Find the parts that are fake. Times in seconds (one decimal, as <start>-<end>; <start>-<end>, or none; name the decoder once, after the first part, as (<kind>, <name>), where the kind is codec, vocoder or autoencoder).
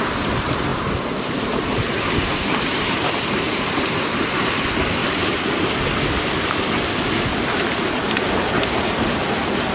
0.0-5.0 (vocoder, BigVGAN v2); 7.9-9.7